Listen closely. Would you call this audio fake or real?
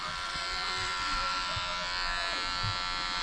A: real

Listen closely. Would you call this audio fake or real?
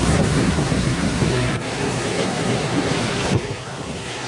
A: fake